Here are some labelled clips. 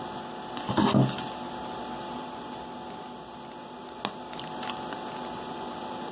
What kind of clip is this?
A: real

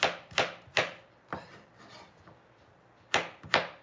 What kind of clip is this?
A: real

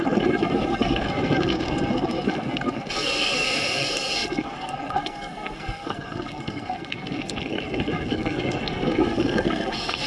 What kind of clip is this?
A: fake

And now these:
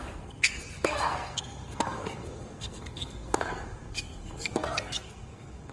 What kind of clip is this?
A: fake